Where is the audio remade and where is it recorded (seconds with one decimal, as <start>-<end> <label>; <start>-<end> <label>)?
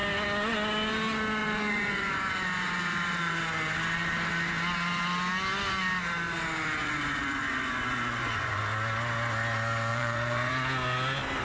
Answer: 0.0-1.4 recorded; 1.4-3.4 remade; 3.4-6.8 recorded; 6.8-8.6 remade; 8.6-9.9 recorded; 9.9-10.5 remade; 10.5-11.4 recorded